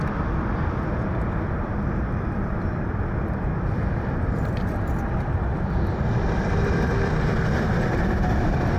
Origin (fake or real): fake